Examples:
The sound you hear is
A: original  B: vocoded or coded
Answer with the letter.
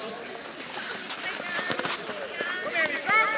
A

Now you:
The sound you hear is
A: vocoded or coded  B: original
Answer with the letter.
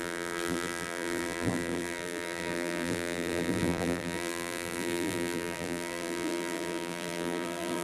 A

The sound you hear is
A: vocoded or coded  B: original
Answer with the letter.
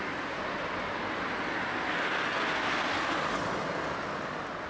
B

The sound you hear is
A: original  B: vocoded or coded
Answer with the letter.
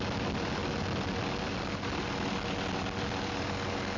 A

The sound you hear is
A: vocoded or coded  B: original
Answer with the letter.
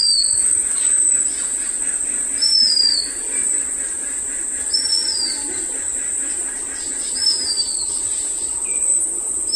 B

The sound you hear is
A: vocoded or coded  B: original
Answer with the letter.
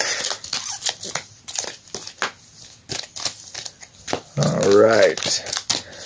B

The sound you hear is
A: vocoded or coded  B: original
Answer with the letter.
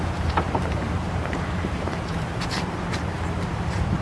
A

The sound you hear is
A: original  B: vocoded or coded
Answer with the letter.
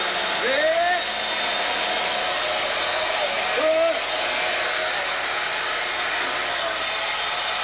A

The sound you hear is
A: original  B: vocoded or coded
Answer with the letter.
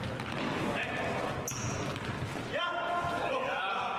A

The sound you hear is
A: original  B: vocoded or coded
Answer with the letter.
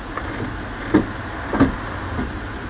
A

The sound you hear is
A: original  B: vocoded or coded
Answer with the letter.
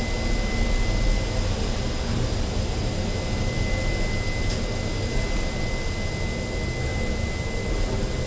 A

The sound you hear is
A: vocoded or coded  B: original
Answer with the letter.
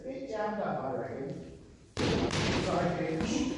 A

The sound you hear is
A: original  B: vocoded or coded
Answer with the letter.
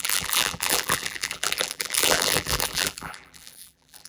B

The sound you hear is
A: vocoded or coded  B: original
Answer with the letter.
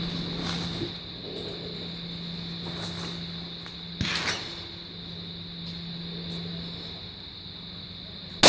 B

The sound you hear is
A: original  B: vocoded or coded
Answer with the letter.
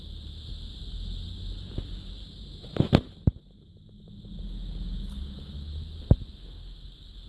A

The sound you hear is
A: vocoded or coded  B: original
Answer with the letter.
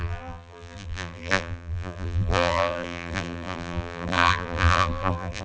A